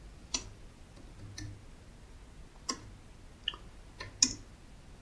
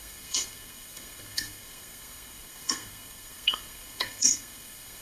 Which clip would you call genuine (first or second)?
first